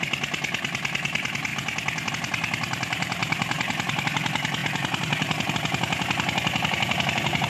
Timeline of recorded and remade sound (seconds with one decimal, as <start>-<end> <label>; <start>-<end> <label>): 0.0-3.2 recorded; 3.2-4.0 remade; 4.0-4.6 recorded; 4.6-5.5 remade; 5.5-7.5 recorded